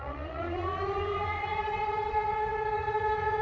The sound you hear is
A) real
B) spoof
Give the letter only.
B